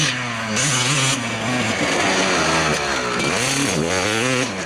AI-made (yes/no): no